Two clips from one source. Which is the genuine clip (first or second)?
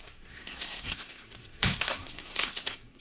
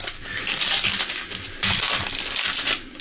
second